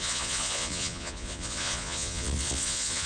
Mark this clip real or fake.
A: fake